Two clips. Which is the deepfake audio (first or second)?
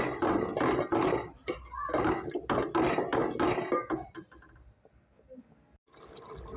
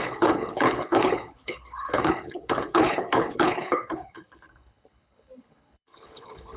second